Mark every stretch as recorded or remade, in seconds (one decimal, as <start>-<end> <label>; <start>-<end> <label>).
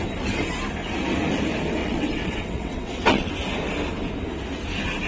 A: 0.0-1.8 recorded; 1.8-3.3 remade; 3.3-5.1 recorded